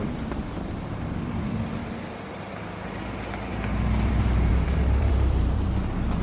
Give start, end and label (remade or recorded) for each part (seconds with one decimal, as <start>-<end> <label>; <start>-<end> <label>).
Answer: 0.0-6.2 remade